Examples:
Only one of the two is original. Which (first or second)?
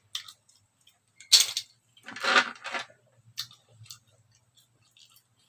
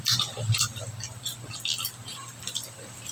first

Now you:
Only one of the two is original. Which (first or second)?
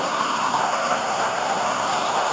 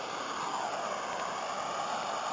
second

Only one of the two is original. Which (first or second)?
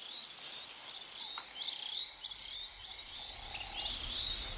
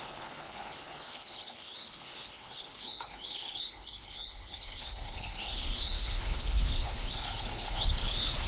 first